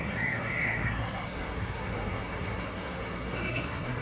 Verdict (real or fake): fake